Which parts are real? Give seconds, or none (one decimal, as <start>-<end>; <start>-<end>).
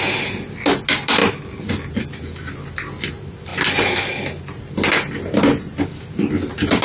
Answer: 0.0-6.8